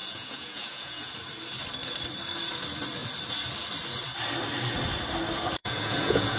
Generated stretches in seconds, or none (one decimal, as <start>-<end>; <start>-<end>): 0.0-1.1; 5.6-6.4